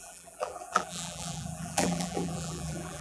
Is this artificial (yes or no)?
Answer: yes